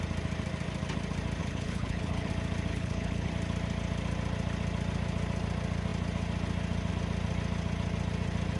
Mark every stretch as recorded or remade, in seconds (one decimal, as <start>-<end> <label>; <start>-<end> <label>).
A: 0.0-1.4 recorded; 1.4-2.3 remade; 2.3-2.7 recorded; 2.7-3.3 remade; 3.3-8.6 recorded